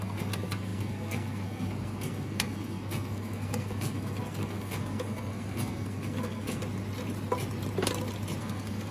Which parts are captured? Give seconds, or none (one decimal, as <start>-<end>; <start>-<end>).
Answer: 6.6-8.4